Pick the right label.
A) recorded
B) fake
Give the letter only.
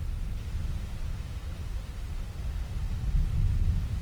A